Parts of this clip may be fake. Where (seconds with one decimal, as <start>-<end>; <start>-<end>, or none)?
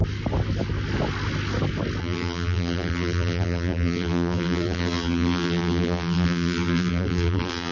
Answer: 2.0-7.7